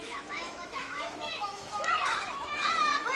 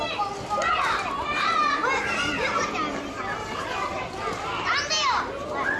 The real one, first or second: second